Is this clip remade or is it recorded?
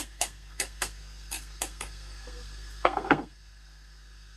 remade